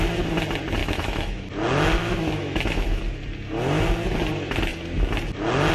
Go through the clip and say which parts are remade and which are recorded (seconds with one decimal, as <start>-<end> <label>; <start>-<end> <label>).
0.0-0.8 recorded; 0.8-1.4 remade; 1.4-2.0 recorded; 2.0-3.0 remade; 3.0-5.7 recorded